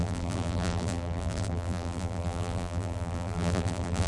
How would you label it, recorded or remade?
remade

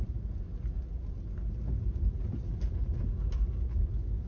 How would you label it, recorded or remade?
recorded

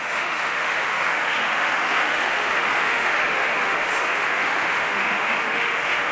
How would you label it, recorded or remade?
remade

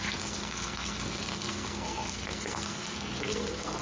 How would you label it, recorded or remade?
remade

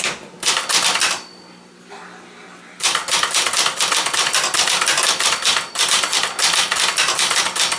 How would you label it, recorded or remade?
recorded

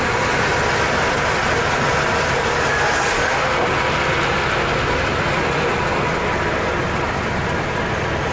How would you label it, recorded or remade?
recorded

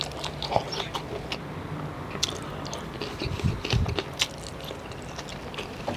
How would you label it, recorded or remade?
recorded